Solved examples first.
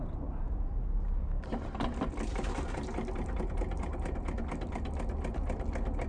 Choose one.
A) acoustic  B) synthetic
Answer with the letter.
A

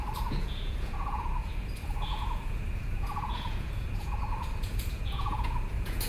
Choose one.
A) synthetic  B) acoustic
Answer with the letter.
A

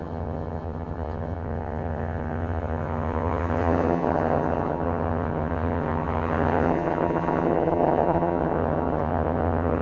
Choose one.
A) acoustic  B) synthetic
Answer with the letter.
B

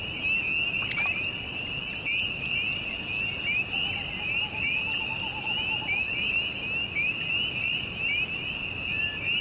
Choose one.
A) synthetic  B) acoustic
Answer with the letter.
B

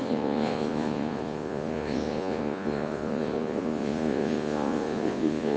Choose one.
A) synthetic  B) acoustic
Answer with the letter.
A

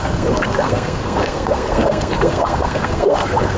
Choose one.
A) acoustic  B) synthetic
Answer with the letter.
B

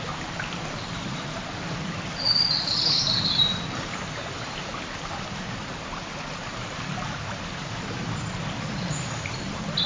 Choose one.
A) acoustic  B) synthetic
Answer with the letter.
A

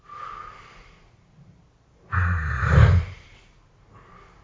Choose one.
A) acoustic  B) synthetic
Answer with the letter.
A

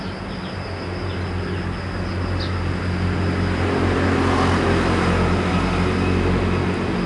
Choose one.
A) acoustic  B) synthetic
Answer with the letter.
A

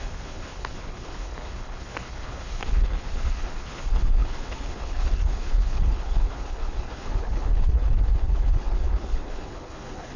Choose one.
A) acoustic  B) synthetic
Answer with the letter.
B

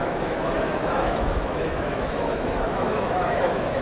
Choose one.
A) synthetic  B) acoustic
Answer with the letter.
A